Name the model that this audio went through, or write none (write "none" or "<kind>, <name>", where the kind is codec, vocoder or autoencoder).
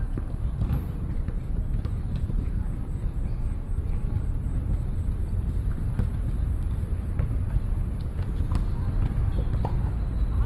none